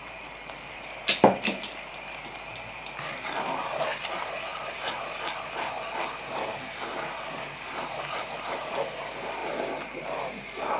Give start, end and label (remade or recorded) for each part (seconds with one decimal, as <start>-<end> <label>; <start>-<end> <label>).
0.0-8.2 recorded; 8.2-8.7 remade; 8.7-10.8 recorded